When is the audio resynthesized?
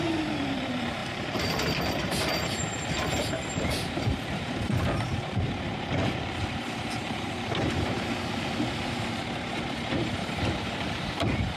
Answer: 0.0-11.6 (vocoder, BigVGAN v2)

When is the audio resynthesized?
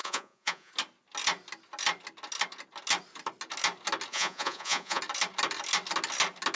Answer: 0.0-0.7 (vocoder, Vocos); 4.1-5.0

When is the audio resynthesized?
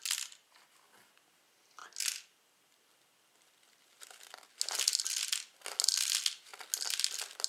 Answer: none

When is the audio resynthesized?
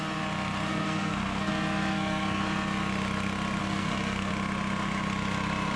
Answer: 0.7-1.5 (codec, SNAC); 1.9-2.4; 3.6-4.3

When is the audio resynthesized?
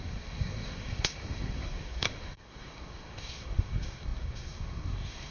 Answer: 0.0-5.3 (codec, SNAC)